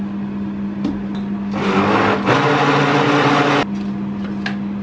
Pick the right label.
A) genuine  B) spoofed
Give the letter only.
A